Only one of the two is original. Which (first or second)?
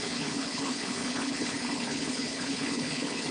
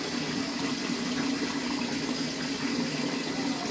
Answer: second